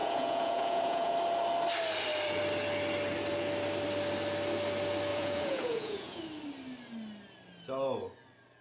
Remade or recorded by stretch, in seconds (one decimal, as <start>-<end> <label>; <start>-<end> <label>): 0.0-1.1 remade; 1.1-5.1 recorded; 5.1-6.2 remade; 6.2-8.6 recorded